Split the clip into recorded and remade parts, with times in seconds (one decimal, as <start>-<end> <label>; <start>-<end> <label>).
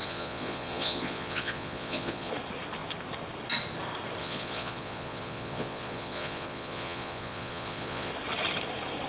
0.0-2.3 remade; 2.3-4.2 recorded; 4.2-8.1 remade; 8.1-9.1 recorded